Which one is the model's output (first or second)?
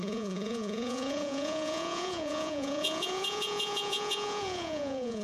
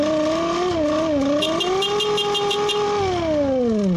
first